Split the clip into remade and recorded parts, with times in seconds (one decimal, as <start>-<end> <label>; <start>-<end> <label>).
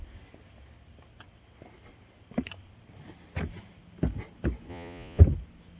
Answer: 0.0-4.7 recorded; 4.7-5.2 remade; 5.2-5.8 recorded